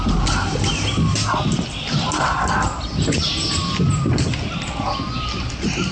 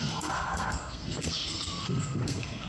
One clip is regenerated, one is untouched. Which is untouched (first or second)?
first